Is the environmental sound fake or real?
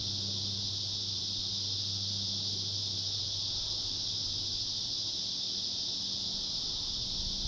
real